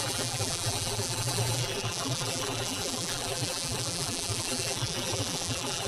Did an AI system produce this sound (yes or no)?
yes